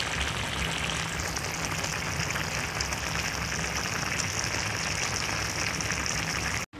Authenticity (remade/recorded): recorded